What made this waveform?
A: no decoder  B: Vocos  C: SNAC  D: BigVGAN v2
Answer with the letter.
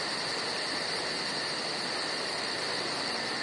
A